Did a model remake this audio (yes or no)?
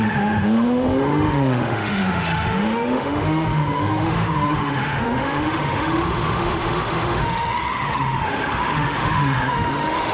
yes